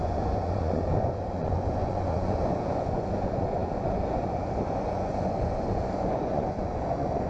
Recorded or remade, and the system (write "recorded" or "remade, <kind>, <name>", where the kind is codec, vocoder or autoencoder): remade, vocoder, Vocos